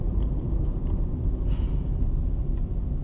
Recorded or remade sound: recorded